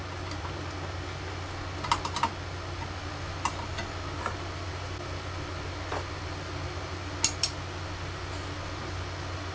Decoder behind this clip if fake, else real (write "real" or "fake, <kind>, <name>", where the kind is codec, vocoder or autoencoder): real